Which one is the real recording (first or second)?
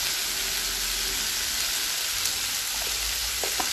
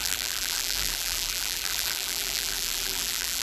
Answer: first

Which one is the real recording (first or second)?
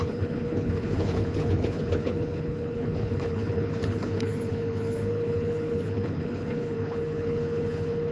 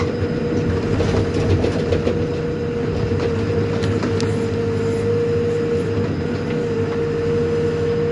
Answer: second